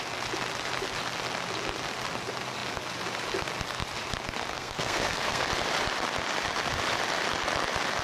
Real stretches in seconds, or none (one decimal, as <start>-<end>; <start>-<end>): 0.0-4.5; 5.5-8.0